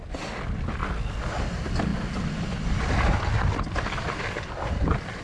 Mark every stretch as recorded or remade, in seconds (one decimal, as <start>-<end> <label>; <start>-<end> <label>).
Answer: 0.0-5.2 recorded